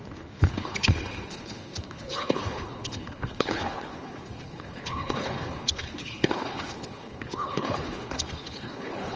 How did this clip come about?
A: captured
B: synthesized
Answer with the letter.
B